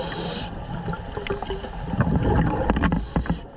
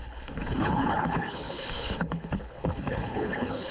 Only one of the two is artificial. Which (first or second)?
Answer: second